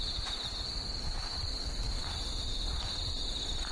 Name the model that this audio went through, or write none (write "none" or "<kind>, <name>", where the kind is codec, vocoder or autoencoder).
none